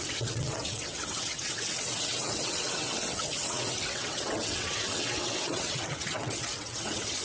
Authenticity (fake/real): fake